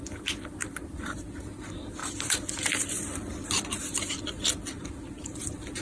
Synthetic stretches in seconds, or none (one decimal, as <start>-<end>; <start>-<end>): 0.6-1.6; 2.0-4.2